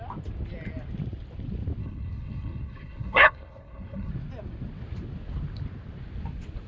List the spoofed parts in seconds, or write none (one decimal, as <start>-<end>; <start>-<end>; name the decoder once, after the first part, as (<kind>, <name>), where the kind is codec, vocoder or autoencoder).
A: 1.8-4.1 (codec, HILCodec)